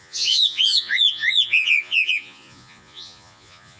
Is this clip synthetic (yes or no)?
yes